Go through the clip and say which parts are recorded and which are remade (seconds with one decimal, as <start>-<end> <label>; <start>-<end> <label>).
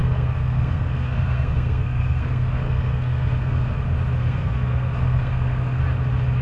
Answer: 0.0-3.8 remade; 3.8-4.2 recorded; 4.2-5.8 remade; 5.8-6.4 recorded